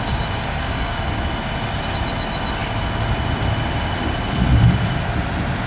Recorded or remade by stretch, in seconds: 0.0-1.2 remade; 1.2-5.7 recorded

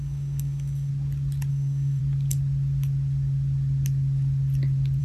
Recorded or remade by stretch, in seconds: 0.0-0.9 remade; 0.9-1.5 recorded; 1.5-2.0 remade; 2.0-5.0 recorded

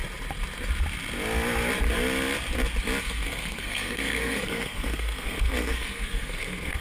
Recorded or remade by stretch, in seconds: 0.0-3.0 recorded; 3.0-6.8 remade

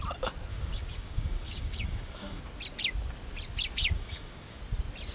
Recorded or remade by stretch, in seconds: 0.0-0.5 recorded; 0.5-2.4 remade; 2.4-3.8 recorded; 3.8-4.6 remade; 4.6-5.1 recorded